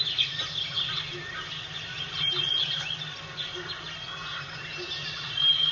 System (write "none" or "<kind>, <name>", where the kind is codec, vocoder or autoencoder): none